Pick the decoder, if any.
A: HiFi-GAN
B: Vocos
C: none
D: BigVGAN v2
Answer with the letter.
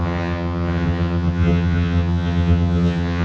A